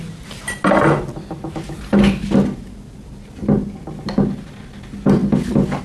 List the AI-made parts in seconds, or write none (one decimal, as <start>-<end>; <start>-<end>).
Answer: none